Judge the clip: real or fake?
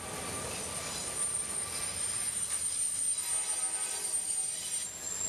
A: real